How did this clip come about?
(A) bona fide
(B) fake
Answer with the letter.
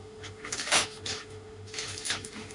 B